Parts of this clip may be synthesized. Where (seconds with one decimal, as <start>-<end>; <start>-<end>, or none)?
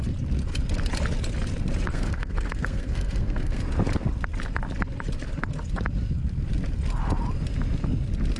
1.9-3.6